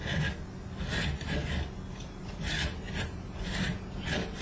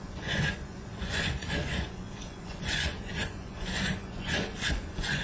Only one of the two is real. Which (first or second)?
first